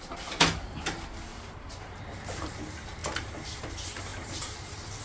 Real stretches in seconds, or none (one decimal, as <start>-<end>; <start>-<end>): 0.0-1.3; 2.6-3.0; 3.6-4.1